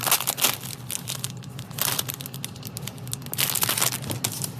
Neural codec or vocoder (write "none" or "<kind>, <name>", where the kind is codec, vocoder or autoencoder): none